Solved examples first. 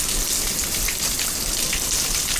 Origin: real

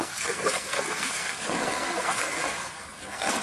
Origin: fake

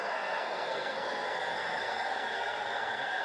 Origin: fake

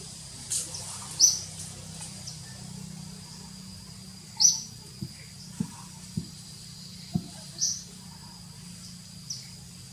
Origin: real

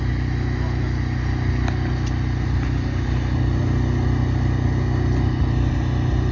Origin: real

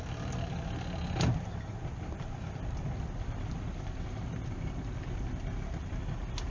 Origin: real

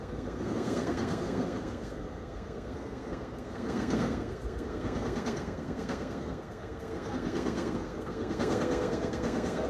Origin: fake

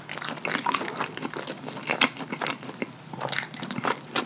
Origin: real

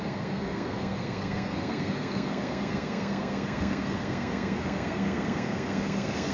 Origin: fake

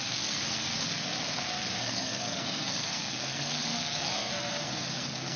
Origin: fake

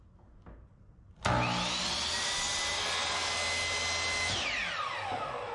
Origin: real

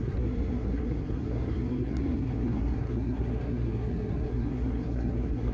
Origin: fake